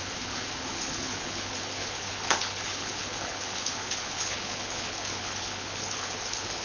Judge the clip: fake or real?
fake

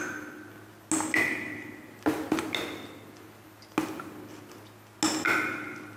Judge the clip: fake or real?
real